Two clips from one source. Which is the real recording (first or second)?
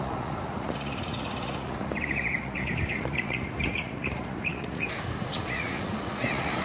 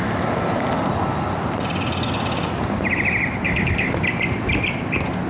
second